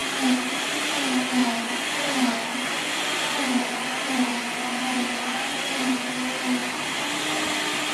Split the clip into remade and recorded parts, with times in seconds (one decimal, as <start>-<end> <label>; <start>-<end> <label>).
0.0-1.4 recorded; 1.4-6.1 remade; 6.1-7.9 recorded